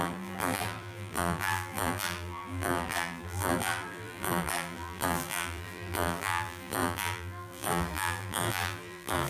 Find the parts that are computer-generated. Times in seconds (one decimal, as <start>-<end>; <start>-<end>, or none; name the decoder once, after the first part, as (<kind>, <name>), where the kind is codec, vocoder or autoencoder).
0.0-9.3 (vocoder, BigVGAN v2)